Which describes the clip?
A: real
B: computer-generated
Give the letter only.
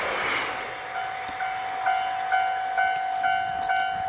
A